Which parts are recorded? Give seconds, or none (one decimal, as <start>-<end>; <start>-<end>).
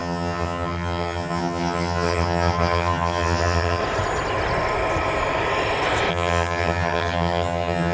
3.8-6.1